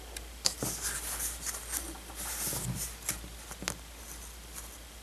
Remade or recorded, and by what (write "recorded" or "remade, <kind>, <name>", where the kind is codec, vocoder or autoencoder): recorded